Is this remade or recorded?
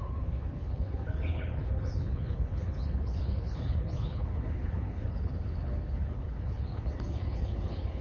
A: remade